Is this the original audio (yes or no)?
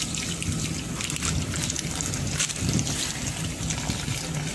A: yes